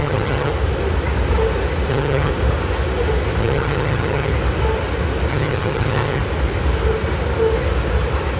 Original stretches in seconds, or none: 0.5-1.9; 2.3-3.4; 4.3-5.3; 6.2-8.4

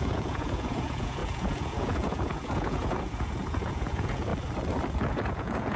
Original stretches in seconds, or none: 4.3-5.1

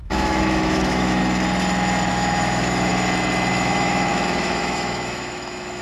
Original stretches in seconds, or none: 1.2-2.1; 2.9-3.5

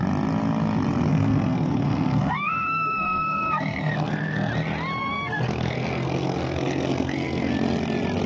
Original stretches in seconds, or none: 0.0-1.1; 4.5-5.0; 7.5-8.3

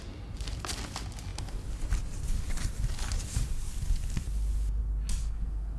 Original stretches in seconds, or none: 0.0-5.2

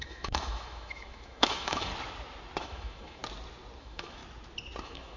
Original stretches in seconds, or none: 1.9-2.6; 3.2-3.8; 4.2-4.8

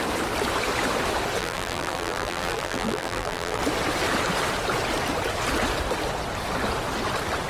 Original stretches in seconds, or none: 0.0-1.4; 3.6-7.5